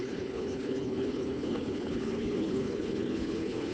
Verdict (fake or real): fake